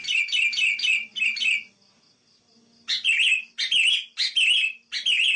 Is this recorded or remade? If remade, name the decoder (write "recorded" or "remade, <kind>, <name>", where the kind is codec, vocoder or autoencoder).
recorded